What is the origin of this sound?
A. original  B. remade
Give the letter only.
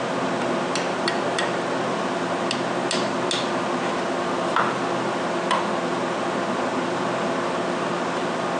A